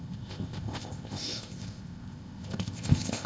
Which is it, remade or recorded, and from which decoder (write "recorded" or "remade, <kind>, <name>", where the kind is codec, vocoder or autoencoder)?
remade, codec, ZipCodec